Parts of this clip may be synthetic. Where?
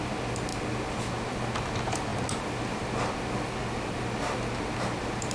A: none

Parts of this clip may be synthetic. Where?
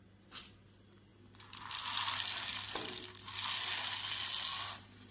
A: none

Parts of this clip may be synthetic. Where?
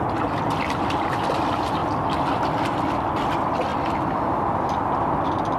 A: 3.7-4.4 (vocoder, BigVGAN v2)